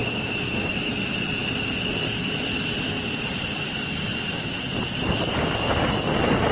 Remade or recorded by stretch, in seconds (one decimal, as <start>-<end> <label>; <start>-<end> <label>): 0.0-0.9 remade; 0.9-6.5 recorded